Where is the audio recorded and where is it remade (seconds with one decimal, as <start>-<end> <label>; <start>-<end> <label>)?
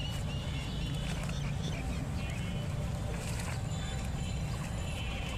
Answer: 0.0-5.4 recorded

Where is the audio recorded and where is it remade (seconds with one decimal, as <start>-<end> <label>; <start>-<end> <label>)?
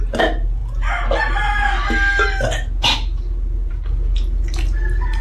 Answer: 0.0-5.2 recorded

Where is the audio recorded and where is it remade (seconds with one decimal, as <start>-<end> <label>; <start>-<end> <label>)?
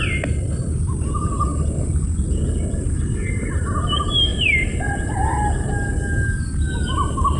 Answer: 0.0-7.4 recorded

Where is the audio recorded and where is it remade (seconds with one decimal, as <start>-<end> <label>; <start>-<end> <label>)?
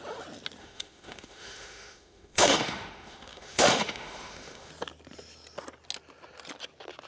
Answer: 0.0-0.6 recorded; 0.6-4.7 remade; 4.7-7.1 recorded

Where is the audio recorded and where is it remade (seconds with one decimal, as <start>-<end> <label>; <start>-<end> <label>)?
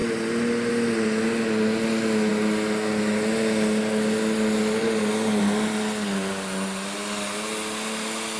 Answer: 0.0-8.4 recorded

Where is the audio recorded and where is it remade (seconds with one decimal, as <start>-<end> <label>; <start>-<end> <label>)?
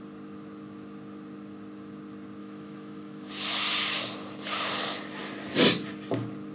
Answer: 0.0-2.4 recorded; 2.4-3.3 remade; 3.3-6.5 recorded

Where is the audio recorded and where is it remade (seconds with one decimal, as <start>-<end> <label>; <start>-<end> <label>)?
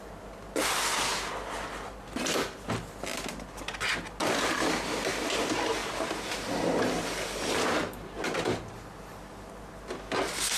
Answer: 0.0-10.6 recorded